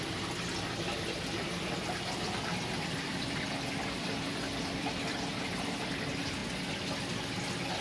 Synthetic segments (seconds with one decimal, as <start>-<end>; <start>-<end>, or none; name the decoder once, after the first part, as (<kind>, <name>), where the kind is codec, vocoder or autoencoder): 2.5-5.7 (vocoder, BigVGAN v2)